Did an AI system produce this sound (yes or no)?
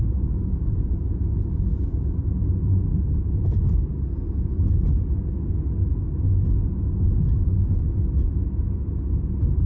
no